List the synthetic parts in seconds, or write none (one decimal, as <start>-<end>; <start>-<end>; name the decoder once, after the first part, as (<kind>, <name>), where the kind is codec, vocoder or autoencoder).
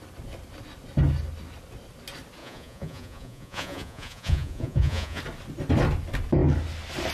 2.4-5.2 (vocoder, Vocos)